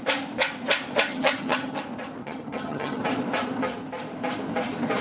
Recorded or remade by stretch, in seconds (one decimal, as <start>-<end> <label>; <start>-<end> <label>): 0.0-1.1 recorded; 1.1-1.8 remade; 1.8-2.2 recorded; 2.2-3.0 remade; 3.0-5.0 recorded